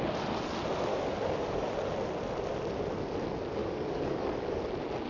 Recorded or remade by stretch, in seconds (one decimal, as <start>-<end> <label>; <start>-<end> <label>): 0.0-0.9 recorded; 0.9-1.7 remade; 1.7-3.6 recorded; 3.6-4.6 remade; 4.6-5.1 recorded